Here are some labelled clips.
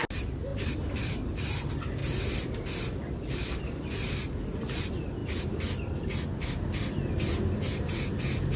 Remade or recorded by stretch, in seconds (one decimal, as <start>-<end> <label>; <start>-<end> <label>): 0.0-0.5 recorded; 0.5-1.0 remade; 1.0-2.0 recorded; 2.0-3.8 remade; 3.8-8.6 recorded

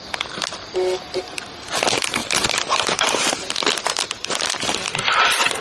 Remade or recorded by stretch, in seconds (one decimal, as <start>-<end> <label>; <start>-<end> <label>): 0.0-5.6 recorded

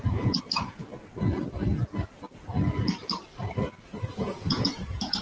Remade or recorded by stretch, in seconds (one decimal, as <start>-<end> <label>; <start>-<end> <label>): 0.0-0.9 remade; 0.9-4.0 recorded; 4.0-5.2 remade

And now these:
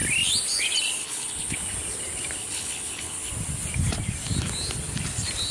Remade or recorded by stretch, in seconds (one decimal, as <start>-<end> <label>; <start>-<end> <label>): 0.0-1.0 recorded; 1.0-1.6 remade; 1.6-2.4 recorded; 2.4-3.3 remade; 3.3-5.5 recorded

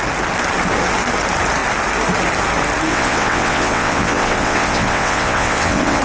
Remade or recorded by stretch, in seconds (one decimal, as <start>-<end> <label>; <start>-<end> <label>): 0.0-2.9 recorded; 2.9-6.0 remade